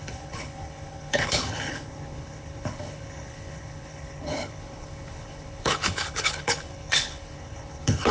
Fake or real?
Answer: fake